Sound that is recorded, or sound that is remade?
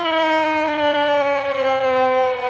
remade